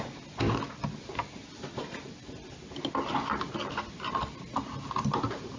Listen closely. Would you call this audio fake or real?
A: real